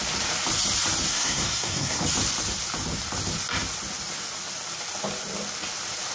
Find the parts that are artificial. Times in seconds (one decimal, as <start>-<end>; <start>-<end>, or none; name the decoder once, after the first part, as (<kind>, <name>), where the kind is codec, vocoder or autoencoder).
1.1-2.0 (codec, SNAC)